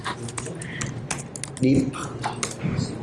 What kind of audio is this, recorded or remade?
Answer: recorded